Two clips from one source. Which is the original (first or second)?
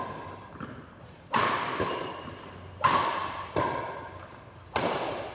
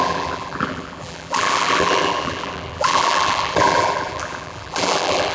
first